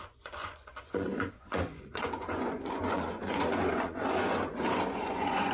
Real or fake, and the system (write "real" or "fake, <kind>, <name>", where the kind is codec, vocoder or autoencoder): fake, vocoder, Vocos